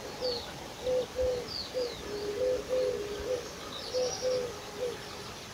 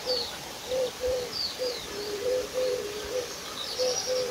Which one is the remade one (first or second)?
second